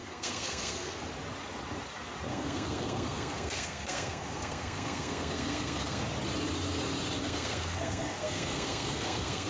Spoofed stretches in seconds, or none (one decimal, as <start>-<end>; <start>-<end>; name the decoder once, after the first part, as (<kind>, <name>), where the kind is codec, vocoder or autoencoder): 0.0-1.0 (codec, SNAC); 2.3-6.0; 7.2-9.5